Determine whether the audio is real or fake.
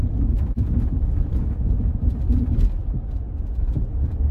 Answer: fake